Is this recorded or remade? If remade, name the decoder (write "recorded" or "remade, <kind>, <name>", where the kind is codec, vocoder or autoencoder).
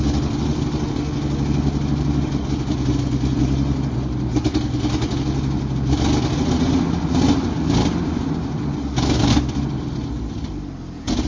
recorded